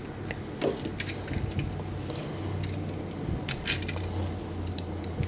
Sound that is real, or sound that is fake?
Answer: real